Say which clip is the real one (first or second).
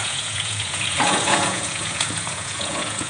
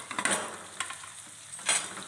second